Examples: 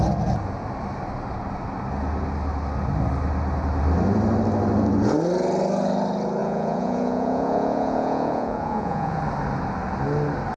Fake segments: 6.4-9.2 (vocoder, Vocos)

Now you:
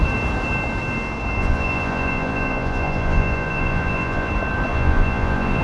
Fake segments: 1.4-4.3 (vocoder, Vocos); 4.7-5.6